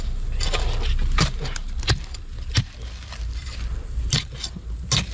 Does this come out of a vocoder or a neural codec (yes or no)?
no